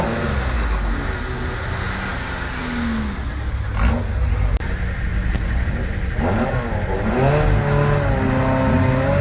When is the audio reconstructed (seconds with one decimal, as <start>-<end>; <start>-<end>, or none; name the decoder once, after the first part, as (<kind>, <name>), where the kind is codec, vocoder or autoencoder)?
2.1-2.6 (vocoder, BigVGAN v2); 5.1-7.3